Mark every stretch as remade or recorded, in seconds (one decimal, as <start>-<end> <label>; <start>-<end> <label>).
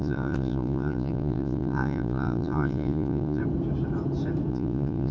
0.0-3.4 remade; 3.4-4.5 recorded; 4.5-5.1 remade